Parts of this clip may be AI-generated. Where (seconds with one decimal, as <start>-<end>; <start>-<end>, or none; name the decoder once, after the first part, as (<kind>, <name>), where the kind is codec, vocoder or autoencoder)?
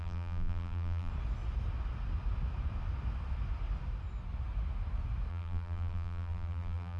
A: 0.0-1.1 (vocoder, BigVGAN v2); 5.3-7.0